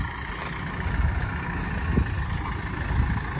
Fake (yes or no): no